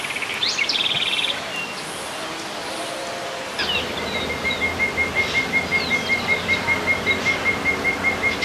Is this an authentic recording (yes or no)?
yes